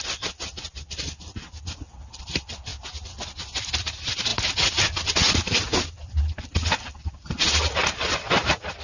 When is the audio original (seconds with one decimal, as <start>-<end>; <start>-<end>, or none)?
2.7-3.8; 4.3-5.3; 5.7-6.2